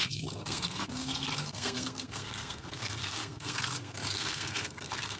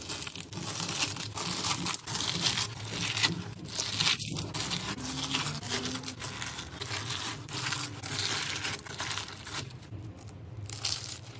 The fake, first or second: first